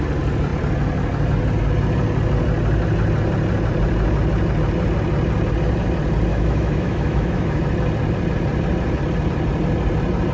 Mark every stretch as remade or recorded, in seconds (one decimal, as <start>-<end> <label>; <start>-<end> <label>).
0.0-6.3 recorded; 6.3-7.6 remade; 7.6-10.3 recorded